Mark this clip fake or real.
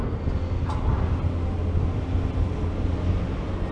real